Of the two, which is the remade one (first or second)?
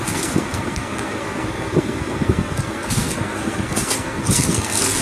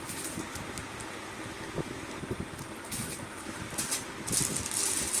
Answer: first